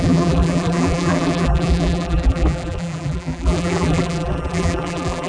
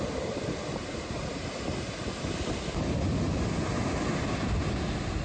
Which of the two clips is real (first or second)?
second